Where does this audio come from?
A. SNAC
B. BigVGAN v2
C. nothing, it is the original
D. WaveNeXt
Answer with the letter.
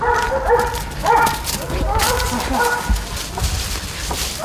C